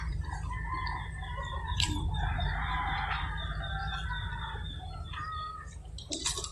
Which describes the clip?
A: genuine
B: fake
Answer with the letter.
B